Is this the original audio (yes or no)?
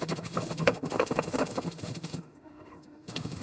no